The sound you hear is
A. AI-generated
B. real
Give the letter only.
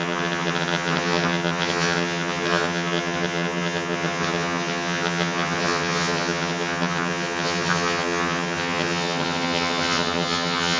A